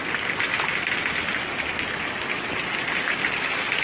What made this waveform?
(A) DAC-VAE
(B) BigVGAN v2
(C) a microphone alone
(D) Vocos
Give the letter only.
C